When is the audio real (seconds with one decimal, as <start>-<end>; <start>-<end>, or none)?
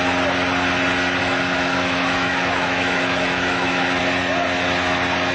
0.0-1.2; 4.0-5.3